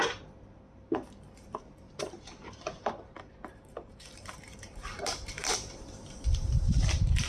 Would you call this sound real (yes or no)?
no